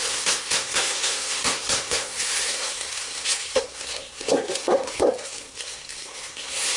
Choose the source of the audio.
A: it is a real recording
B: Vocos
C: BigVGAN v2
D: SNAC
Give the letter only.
D